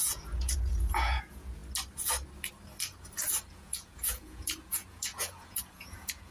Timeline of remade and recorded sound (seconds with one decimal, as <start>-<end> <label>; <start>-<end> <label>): 0.0-1.6 remade; 1.6-3.5 recorded; 3.5-6.3 remade